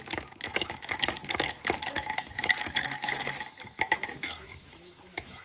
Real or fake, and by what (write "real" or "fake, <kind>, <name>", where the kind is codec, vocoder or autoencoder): fake, autoencoder, DAC-VAE